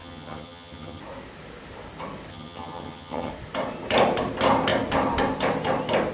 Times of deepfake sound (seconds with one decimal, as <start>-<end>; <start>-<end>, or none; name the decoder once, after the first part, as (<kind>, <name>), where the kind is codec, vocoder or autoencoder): 0.0-1.0 (vocoder, HiFi-GAN); 2.3-3.3

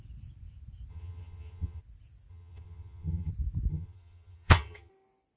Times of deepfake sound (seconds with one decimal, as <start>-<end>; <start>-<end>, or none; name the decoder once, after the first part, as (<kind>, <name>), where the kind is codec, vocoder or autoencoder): 0.9-1.8 (vocoder, HiFi-GAN); 2.3-3.3; 3.7-4.9

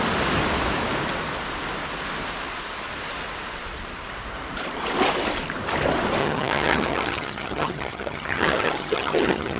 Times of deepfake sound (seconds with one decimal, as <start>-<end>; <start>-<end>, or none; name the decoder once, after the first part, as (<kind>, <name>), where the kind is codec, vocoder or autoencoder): 6.2-9.6 (vocoder, HiFi-GAN)

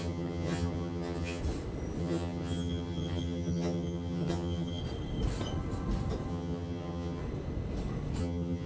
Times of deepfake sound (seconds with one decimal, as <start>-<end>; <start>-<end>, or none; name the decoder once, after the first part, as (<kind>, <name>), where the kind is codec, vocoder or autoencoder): 0.0-1.4 (vocoder, HiFi-GAN); 2.0-4.8; 6.3-7.2; 8.2-8.7

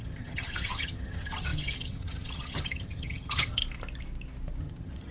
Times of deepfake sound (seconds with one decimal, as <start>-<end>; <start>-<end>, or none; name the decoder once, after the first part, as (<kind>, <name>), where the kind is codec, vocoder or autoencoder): 0.0-3.6 (vocoder, HiFi-GAN); 4.6-5.1

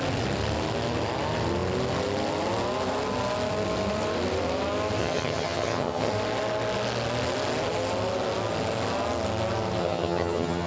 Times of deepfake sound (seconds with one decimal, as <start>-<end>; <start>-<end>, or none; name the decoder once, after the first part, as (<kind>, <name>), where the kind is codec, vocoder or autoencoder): 5.0-6.1 (vocoder, HiFi-GAN); 9.8-10.7

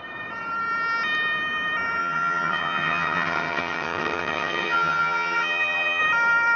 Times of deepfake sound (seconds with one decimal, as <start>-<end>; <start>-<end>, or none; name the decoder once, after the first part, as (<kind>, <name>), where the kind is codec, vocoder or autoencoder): 2.0-6.0 (vocoder, HiFi-GAN)